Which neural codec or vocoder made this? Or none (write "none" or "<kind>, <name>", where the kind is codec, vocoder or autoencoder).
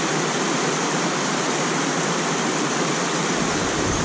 none